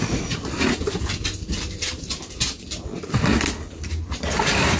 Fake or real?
real